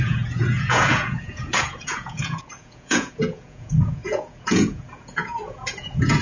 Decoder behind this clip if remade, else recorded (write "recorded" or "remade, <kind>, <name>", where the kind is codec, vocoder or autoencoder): remade, vocoder, Vocos